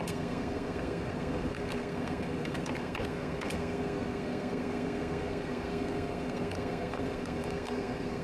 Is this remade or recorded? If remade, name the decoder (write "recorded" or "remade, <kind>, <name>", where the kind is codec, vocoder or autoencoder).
remade, codec, SNAC